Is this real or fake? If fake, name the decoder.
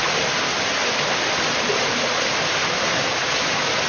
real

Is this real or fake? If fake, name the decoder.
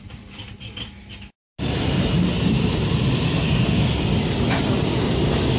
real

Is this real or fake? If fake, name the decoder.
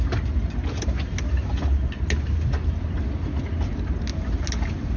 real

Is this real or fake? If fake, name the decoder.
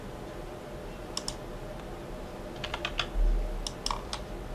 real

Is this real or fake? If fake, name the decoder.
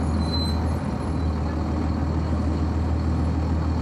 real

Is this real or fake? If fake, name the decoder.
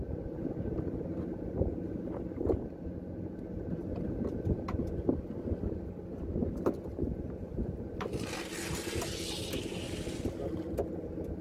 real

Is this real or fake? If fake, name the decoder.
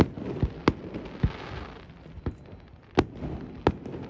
real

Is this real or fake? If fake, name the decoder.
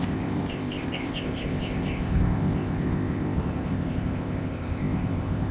fake, codec, ZipCodec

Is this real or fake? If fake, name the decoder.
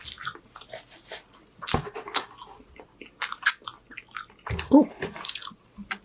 real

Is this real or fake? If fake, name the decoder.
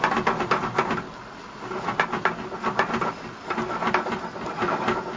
real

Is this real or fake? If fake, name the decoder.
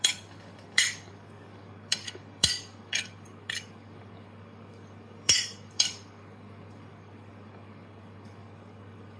fake, codec, DAC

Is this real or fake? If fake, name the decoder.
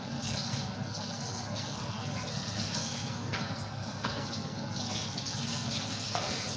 fake, codec, SNAC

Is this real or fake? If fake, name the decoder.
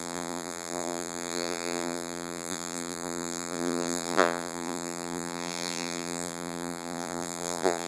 fake, vocoder, BigVGAN v2